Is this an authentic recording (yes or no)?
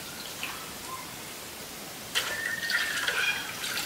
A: yes